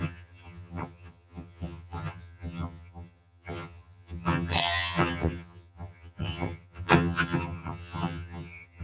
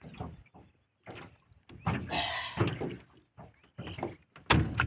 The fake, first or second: first